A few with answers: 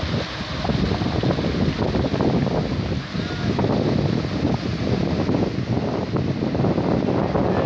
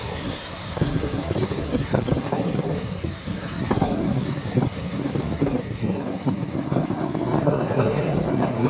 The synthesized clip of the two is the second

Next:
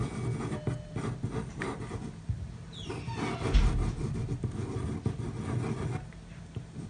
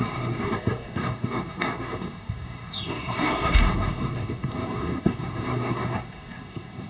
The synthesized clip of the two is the second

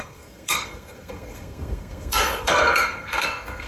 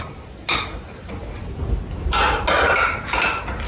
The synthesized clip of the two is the first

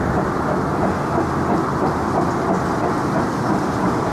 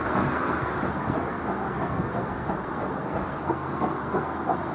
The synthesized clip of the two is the second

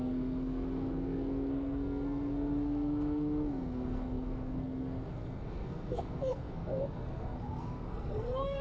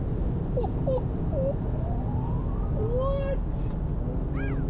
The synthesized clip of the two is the first